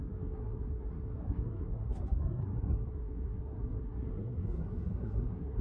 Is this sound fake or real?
fake